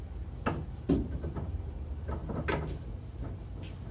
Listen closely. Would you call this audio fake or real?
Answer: real